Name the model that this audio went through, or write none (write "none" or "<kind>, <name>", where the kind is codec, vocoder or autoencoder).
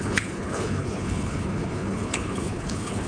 codec, HILCodec